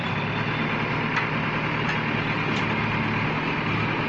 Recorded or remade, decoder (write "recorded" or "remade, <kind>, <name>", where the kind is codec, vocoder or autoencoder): recorded